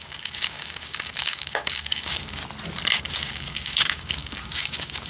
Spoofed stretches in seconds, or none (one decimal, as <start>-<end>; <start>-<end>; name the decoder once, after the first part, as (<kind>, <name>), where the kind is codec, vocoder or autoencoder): 0.0-2.4 (codec, DAC); 3.0-5.1